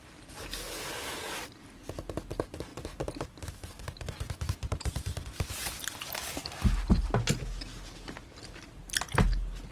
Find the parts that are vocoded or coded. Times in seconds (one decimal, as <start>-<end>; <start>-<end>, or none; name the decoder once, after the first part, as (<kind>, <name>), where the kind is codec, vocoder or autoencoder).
none